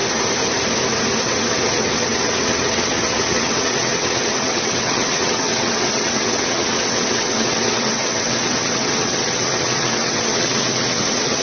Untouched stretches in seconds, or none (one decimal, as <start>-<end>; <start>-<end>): 0.0-1.2